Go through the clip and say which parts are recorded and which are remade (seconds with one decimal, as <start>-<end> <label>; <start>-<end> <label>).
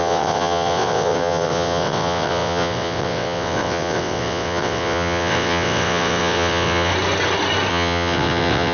0.0-6.9 remade; 6.9-7.7 recorded; 7.7-8.7 remade